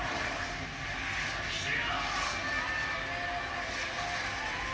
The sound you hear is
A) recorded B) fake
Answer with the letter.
A